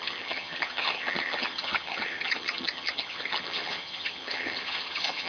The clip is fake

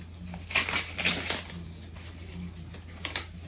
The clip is real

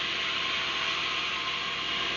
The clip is real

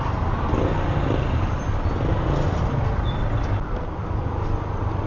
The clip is real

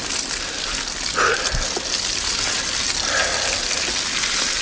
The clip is real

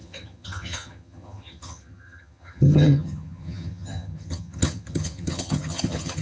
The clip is fake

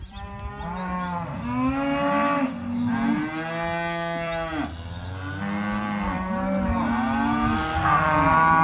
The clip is real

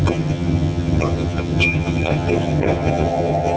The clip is fake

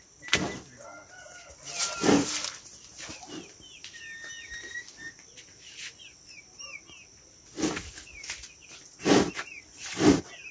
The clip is real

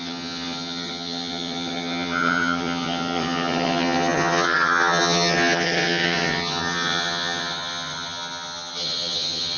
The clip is fake